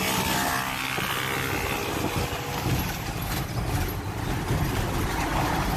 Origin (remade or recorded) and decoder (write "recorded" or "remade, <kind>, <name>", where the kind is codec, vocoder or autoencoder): recorded